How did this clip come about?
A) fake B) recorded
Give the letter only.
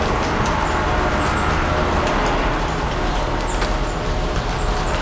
B